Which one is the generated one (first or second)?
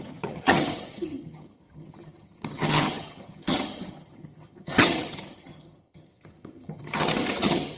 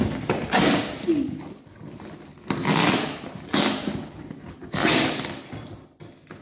first